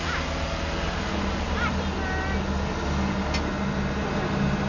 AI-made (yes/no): no